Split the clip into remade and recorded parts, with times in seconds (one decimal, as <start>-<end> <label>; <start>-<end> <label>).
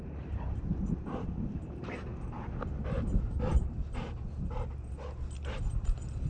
0.0-2.1 remade; 2.1-6.3 recorded